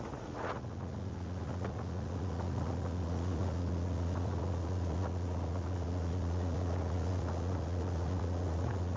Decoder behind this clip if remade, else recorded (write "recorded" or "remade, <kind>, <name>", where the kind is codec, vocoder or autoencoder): remade, vocoder, Vocos